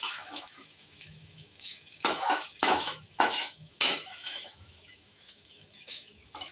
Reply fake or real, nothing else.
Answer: fake